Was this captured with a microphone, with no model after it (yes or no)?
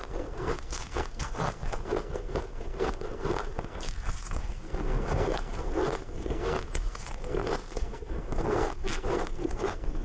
no